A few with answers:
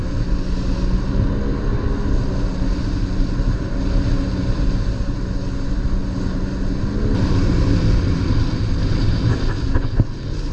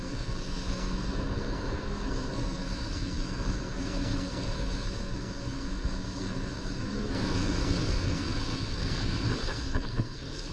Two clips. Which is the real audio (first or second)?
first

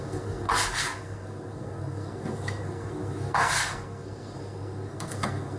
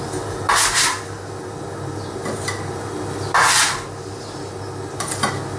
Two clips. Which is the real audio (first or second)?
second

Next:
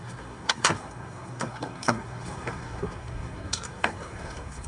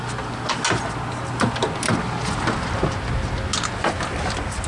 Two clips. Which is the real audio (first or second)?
second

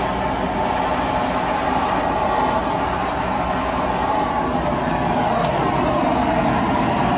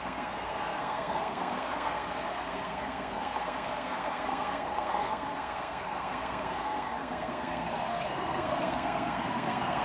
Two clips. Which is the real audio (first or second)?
first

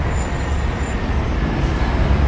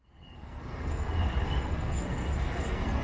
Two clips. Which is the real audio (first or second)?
first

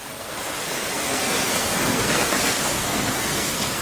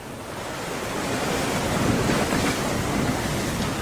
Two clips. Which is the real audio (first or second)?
second